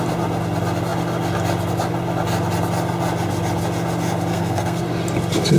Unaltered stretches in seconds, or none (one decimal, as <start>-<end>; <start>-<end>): 0.0-4.3; 4.8-5.6